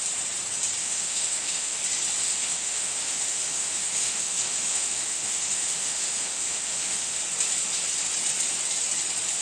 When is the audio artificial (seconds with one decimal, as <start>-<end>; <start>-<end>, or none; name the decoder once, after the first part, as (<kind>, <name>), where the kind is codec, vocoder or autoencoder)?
0.8-1.8 (autoencoder, DAC-VAE); 2.2-7.2